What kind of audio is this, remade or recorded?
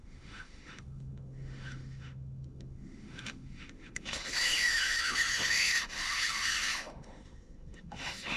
remade